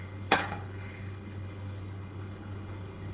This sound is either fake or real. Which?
fake